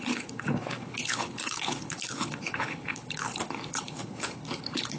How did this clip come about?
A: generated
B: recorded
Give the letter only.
A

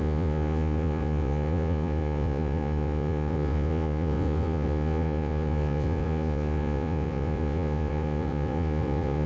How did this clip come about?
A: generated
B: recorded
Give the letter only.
A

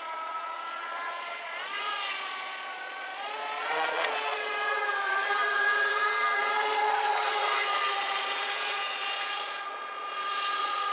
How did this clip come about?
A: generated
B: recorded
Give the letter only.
A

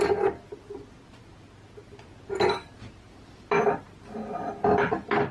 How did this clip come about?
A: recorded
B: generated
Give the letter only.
A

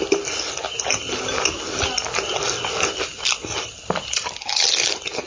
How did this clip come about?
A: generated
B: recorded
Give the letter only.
B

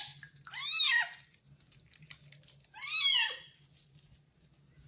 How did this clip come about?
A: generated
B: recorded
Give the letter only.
B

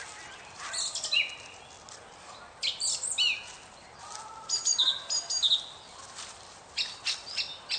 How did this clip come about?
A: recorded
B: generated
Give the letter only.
A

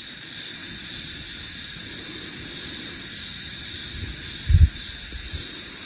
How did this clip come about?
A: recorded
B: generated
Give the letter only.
A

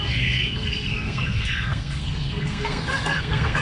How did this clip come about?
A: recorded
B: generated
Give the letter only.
B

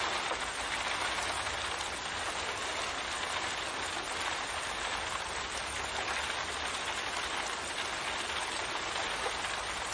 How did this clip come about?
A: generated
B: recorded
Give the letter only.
B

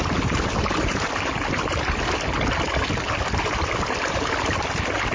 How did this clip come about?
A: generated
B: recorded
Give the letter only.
B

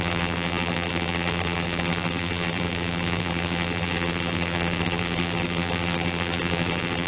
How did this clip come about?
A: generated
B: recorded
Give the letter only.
A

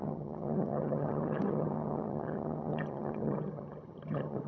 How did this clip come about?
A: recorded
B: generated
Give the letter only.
B